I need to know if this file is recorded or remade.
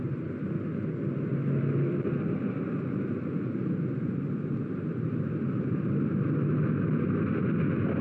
recorded